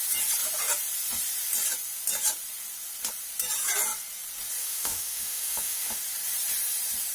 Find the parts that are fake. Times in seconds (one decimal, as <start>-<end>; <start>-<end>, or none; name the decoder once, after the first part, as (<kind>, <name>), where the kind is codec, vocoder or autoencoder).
4.6-6.0 (autoencoder, DAC-VAE)